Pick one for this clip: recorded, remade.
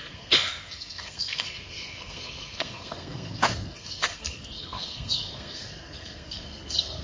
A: remade